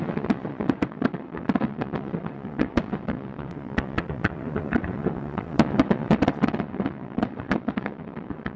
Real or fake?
fake